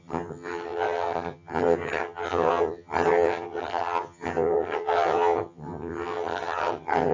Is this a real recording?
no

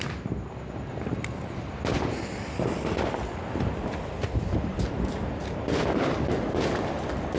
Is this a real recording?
yes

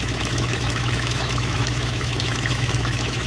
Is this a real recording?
no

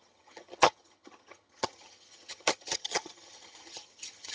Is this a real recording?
no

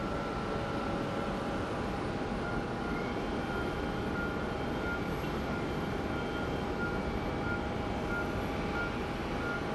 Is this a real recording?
yes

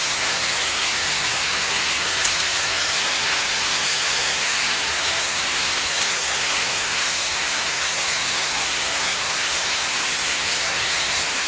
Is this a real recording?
no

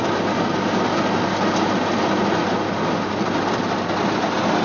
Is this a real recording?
yes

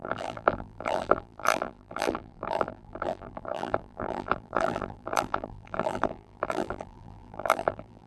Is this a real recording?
no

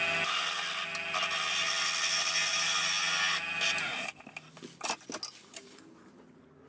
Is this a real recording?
yes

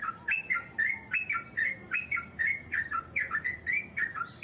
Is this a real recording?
yes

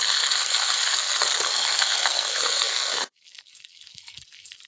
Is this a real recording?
no